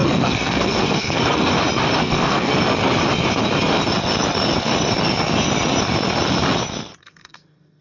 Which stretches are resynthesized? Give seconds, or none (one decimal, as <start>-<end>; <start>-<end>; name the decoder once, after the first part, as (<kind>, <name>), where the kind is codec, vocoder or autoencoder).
0.0-1.5 (codec, SNAC); 2.0-2.5; 7.0-7.8

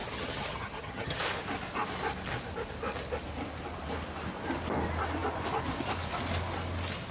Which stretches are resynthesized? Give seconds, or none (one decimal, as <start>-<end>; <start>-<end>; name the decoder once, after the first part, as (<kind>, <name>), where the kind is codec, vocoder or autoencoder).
0.0-1.2 (vocoder, HiFi-GAN)

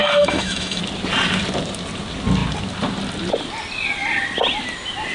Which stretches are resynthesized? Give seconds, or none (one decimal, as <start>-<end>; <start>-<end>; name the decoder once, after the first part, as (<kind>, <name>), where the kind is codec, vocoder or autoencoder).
0.0-0.8 (autoencoder, DAC-VAE)

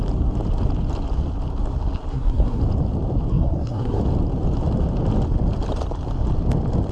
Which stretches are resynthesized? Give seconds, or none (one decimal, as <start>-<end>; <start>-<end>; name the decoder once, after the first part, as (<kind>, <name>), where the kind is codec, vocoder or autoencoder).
2.1-2.6 (codec, SNAC); 3.3-4.0

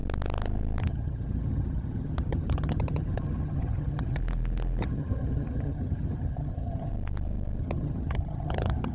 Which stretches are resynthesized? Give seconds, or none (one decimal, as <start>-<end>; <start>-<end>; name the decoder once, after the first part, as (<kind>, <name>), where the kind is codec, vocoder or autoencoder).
0.8-4.2 (vocoder, HiFi-GAN); 4.8-6.9; 7.6-8.9

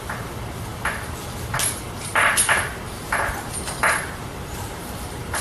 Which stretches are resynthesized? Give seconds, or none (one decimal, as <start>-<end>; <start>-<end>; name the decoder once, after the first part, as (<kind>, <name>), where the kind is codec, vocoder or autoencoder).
none

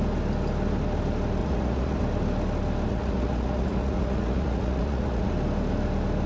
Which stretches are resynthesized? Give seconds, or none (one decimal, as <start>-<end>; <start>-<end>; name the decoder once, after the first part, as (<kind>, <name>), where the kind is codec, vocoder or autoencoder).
1.4-2.0 (vocoder, Vocos); 2.9-5.3

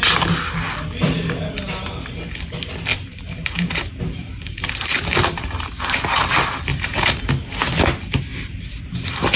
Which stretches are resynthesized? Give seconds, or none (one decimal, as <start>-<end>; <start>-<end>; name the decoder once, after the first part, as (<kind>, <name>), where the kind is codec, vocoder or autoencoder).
2.9-6.3 (vocoder, BigVGAN v2); 6.7-7.3; 8.3-9.4